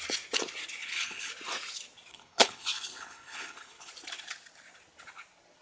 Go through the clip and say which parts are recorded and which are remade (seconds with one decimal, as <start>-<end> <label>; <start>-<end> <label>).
0.0-0.8 recorded; 0.8-1.3 remade; 1.3-2.1 recorded; 2.1-3.9 remade; 3.9-5.6 recorded